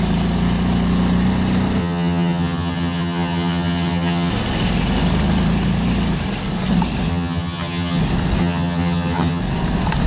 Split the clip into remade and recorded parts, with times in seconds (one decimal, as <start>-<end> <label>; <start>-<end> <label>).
0.0-1.8 recorded; 1.8-4.3 remade; 4.3-7.1 recorded; 7.1-8.0 remade; 8.0-8.4 recorded; 8.4-9.4 remade; 9.4-10.1 recorded